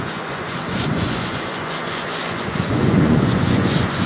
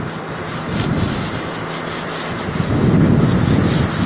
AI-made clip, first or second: first